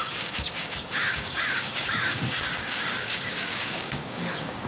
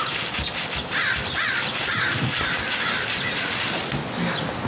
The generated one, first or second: first